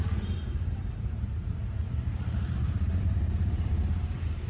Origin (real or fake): fake